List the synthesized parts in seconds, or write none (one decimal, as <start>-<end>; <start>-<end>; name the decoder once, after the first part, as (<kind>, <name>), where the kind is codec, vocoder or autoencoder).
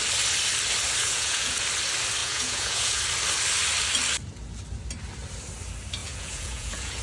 1.0-1.6 (vocoder, Vocos); 2.2-3.0; 6.0-7.0